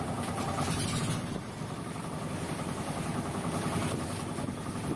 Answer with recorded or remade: remade